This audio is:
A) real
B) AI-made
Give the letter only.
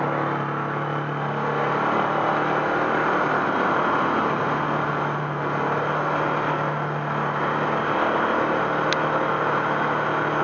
A